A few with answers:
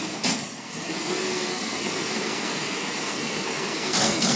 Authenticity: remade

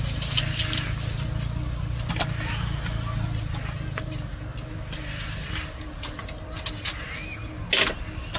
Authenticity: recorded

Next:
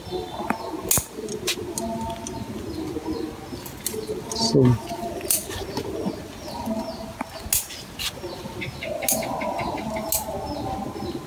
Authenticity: recorded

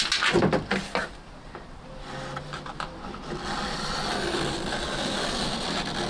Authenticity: recorded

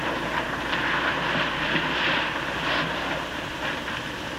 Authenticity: recorded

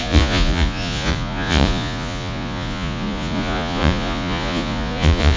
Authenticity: remade